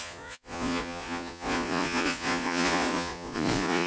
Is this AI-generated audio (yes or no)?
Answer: yes